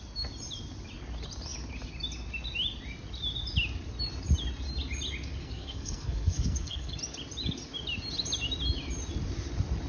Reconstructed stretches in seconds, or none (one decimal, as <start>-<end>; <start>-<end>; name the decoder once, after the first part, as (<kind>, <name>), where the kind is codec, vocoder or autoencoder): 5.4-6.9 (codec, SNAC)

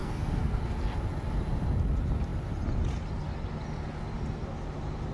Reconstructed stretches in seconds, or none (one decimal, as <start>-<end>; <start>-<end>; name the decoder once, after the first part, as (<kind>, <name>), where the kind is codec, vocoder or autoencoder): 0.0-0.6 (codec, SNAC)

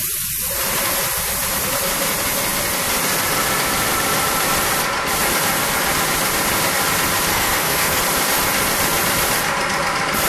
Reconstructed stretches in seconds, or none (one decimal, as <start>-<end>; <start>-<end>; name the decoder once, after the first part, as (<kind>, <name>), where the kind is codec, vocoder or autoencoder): 7.3-8.0 (codec, SNAC)

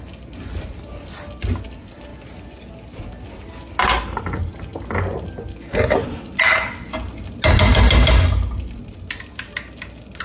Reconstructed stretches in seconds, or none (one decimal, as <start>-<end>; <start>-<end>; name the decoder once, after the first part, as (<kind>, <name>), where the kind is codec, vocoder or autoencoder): none

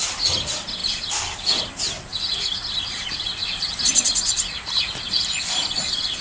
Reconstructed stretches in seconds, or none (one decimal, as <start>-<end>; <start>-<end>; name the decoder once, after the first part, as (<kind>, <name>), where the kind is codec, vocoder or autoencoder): none